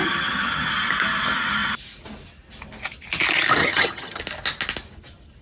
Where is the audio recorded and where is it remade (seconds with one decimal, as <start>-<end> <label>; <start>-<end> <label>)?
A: 0.0-0.7 remade; 0.7-3.6 recorded; 3.6-4.2 remade; 4.2-5.4 recorded